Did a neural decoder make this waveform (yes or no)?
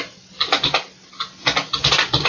no